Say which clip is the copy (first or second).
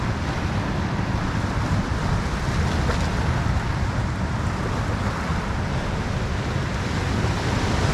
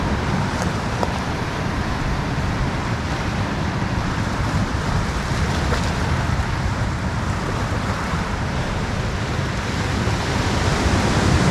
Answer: second